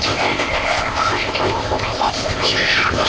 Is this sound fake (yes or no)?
yes